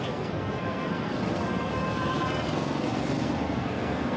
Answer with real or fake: fake